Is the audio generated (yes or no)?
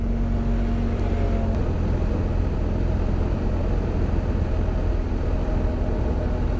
no